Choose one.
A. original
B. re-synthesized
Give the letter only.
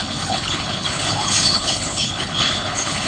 B